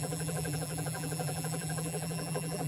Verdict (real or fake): fake